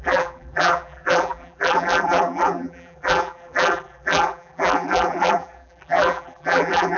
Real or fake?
fake